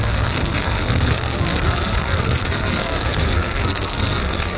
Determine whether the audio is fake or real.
fake